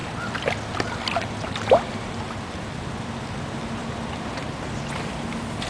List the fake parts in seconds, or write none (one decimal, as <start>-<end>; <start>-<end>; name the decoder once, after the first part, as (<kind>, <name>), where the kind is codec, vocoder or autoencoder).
none